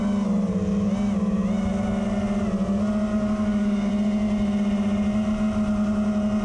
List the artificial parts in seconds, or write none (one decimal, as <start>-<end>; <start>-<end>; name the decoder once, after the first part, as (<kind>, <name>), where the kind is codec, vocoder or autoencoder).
3.1-3.9 (codec, DAC)